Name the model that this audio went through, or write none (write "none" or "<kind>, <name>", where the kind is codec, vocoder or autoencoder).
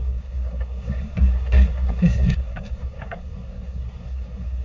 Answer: codec, SNAC